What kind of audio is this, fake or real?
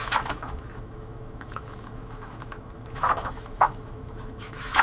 fake